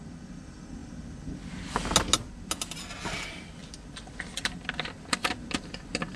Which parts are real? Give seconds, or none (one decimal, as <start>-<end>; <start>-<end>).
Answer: 0.0-6.2

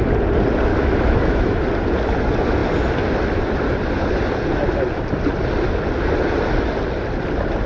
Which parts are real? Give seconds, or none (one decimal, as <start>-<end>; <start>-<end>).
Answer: 0.0-0.7; 1.6-7.7

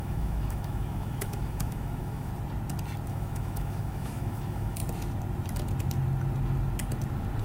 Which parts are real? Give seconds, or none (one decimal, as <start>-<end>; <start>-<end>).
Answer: 2.3-3.1; 4.8-7.4

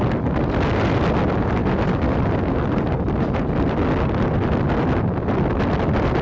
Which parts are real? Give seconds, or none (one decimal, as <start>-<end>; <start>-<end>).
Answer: 0.0-6.2

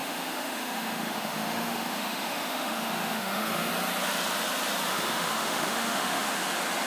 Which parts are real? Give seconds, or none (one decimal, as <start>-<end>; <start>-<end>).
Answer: 3.7-4.9; 6.5-6.9

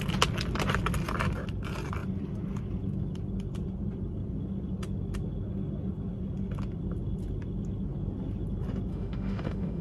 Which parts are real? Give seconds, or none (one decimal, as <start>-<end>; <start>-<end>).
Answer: 0.0-8.9

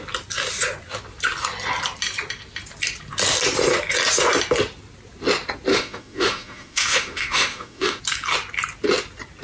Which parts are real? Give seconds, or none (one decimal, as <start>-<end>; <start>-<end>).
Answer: 0.0-5.7; 8.0-9.4